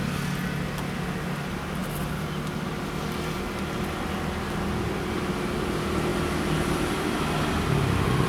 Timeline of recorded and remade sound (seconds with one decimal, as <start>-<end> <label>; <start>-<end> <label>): 0.0-8.3 recorded